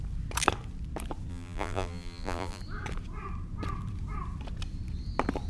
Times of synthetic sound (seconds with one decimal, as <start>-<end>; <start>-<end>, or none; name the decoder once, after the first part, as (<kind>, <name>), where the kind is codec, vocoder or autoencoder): 1.3-2.6 (vocoder, BigVGAN v2)